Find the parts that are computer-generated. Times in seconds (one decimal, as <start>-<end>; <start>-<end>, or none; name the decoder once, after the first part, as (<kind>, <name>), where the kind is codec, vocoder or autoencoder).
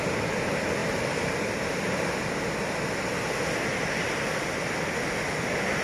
none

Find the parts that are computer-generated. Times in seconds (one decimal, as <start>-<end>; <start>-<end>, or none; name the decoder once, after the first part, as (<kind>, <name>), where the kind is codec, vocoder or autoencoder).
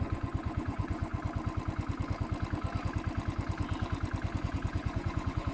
0.0-1.1 (vocoder, Vocos); 4.4-5.5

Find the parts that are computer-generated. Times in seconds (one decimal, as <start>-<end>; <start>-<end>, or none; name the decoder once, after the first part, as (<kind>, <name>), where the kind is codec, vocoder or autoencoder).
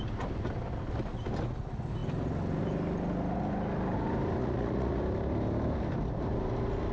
4.4-5.0 (vocoder, Vocos)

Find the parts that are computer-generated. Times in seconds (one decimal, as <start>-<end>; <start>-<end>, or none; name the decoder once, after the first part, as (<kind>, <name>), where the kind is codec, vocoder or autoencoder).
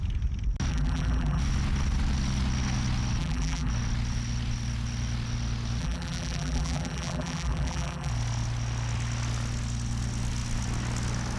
0.7-1.4 (vocoder, BigVGAN v2); 3.2-3.7; 5.8-8.1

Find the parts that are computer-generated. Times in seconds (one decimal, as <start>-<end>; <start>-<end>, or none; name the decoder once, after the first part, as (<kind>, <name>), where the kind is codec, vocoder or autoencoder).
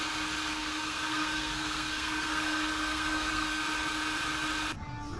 0.5-3.6 (codec, SNAC)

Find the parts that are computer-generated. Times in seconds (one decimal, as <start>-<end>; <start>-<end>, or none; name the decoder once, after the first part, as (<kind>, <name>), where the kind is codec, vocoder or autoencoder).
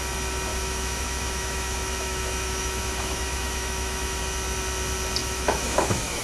0.5-4.2 (autoencoder, DAC-VAE); 5.2-6.2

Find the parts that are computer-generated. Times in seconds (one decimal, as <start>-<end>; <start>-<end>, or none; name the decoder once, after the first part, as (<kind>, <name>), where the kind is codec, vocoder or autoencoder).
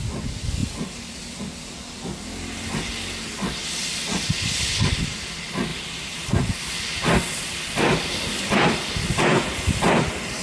none